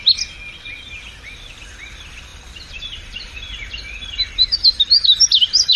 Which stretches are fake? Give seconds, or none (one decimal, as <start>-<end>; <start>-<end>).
none